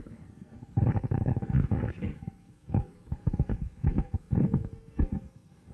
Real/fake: fake